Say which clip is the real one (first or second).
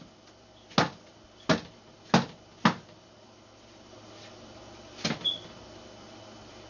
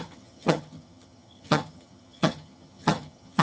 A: first